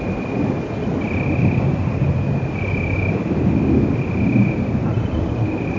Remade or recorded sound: recorded